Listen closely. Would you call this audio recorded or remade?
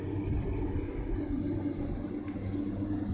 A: recorded